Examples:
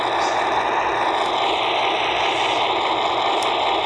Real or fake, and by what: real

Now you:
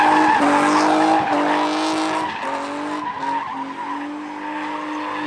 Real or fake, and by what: real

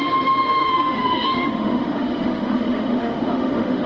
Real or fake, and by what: fake, autoencoder, DAC-VAE